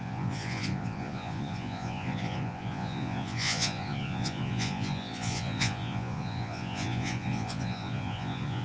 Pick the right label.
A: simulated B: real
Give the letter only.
A